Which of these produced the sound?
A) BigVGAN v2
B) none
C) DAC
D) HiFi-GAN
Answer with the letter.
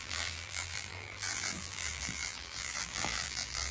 A